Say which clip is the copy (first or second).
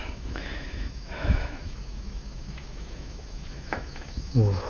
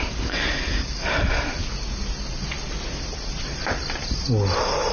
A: first